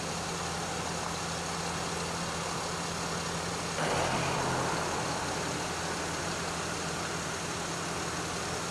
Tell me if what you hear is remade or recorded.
recorded